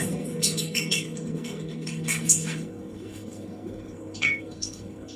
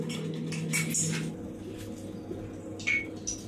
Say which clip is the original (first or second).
second